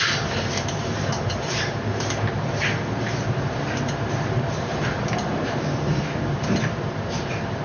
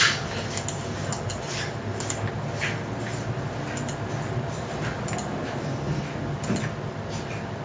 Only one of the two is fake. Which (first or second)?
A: first